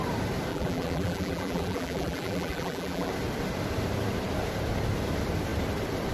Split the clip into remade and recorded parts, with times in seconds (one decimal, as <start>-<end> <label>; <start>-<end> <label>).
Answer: 0.0-0.5 recorded; 0.5-3.1 remade; 3.1-6.1 recorded